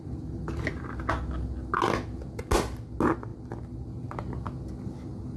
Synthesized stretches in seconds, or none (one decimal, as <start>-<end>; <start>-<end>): none